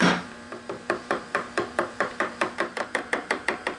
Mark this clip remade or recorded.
remade